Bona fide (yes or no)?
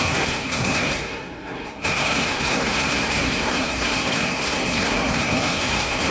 no